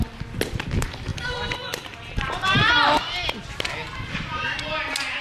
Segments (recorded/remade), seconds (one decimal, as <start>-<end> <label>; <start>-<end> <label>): 0.0-1.1 recorded; 1.1-2.3 remade; 2.3-5.2 recorded